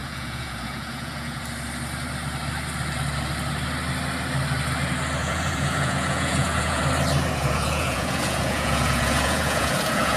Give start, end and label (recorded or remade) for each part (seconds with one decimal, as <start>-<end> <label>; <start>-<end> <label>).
0.0-1.4 remade; 1.4-5.2 recorded; 5.2-6.8 remade; 6.8-7.4 recorded; 7.4-10.2 remade